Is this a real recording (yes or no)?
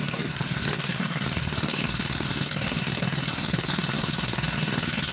no